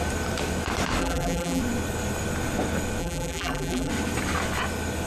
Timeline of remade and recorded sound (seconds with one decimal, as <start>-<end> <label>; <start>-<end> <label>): 0.0-1.0 recorded; 1.0-1.6 remade; 1.6-3.0 recorded; 3.0-3.9 remade; 3.9-5.1 recorded